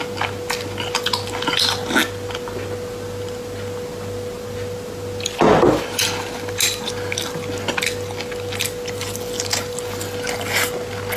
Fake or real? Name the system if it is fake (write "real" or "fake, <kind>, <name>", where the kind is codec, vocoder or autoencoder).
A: real